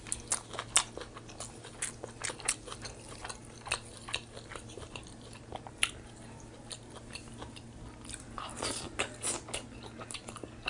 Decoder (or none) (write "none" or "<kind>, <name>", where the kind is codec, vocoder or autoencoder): none